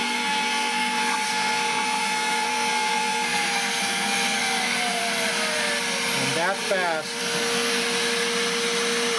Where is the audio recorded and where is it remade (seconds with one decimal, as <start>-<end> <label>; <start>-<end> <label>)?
0.0-5.0 remade; 5.0-7.2 recorded; 7.2-7.8 remade; 7.8-9.2 recorded